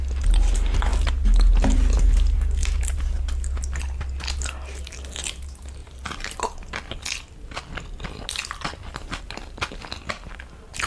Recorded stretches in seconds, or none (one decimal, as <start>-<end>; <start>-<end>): 0.0-5.8; 6.4-10.9

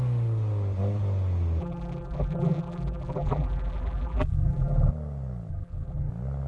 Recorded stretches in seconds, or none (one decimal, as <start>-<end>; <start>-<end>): 0.0-1.6; 4.9-5.5; 6.1-6.5